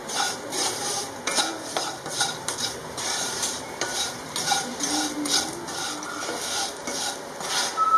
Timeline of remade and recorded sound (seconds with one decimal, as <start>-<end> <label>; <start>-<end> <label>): 0.0-4.8 remade; 4.8-8.0 recorded